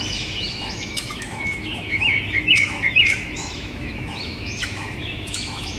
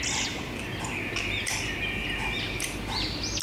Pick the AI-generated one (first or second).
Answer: first